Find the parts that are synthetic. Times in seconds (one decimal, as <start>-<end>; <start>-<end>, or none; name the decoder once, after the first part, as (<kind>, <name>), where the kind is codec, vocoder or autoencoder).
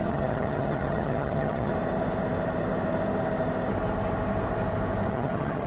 0.0-1.7 (vocoder, HiFi-GAN); 5.1-5.7